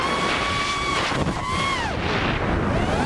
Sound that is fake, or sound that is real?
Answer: real